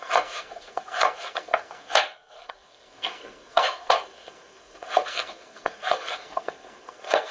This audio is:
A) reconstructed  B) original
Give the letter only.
A